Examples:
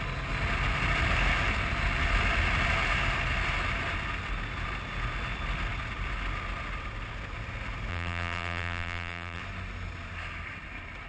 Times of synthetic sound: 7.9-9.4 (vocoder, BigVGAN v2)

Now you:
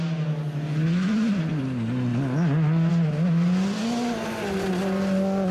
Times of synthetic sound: none

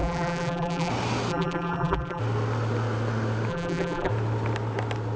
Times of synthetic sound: 0.0-0.9 (vocoder, BigVGAN v2); 1.3-2.2; 3.5-4.1

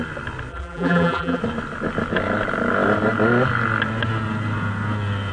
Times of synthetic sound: 0.5-1.4 (vocoder, BigVGAN v2)